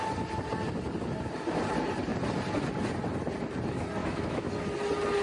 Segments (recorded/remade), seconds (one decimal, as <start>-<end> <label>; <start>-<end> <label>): 0.0-4.0 recorded; 4.0-4.5 remade; 4.5-5.2 recorded